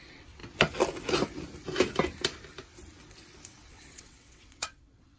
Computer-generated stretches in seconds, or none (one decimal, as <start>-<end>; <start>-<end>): 0.0-0.4; 3.5-5.2